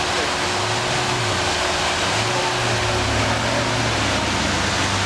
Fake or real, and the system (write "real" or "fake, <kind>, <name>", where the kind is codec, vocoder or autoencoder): real